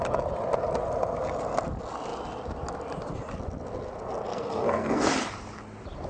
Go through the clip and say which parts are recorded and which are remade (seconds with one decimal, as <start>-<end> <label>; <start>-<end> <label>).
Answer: 0.0-4.3 recorded; 4.3-5.1 remade; 5.1-6.1 recorded